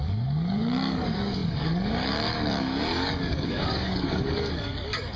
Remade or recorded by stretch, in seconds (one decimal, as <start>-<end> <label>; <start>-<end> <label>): 0.0-5.2 remade

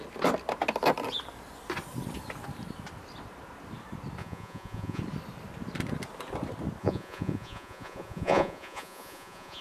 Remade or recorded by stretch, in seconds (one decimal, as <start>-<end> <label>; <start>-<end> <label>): 0.0-4.2 recorded; 4.2-5.0 remade; 5.0-6.8 recorded; 6.8-9.6 remade

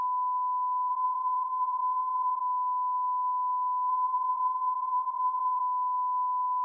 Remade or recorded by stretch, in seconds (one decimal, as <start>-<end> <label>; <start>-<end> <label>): 0.0-0.9 recorded; 0.9-2.4 remade; 2.4-3.9 recorded; 3.9-5.6 remade; 5.6-6.6 recorded

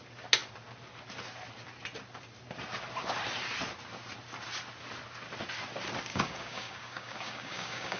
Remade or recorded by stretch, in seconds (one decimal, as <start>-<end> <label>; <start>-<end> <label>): 0.0-6.1 recorded; 6.1-8.0 remade

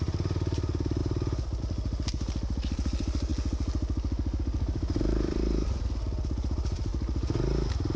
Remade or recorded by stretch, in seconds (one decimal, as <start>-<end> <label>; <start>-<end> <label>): 0.0-3.3 remade; 3.3-4.4 recorded; 4.4-6.9 remade; 6.9-8.0 recorded